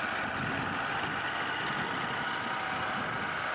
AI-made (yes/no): no